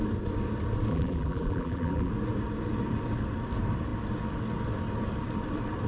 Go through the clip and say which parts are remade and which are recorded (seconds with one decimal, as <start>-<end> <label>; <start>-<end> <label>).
0.0-0.9 recorded; 0.9-2.1 remade; 2.1-5.9 recorded